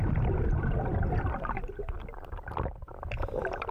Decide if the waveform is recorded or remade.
remade